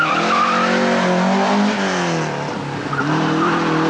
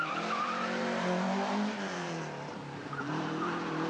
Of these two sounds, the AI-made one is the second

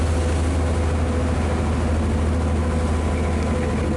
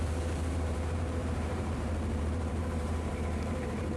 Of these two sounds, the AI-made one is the second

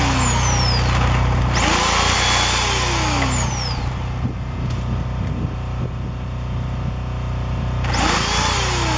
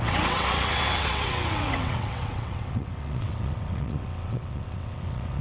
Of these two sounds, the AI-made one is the second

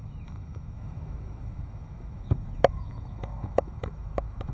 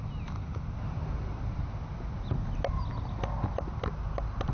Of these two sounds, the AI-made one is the first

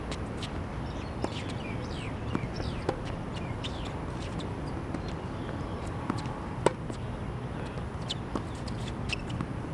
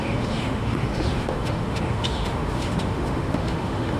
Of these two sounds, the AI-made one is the second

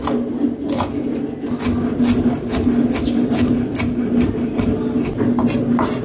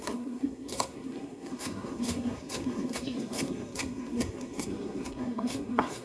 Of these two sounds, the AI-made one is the second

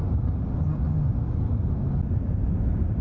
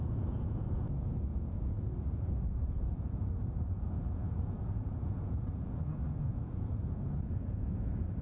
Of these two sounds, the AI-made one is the second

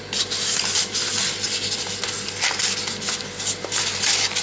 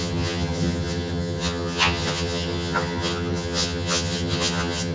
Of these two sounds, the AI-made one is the second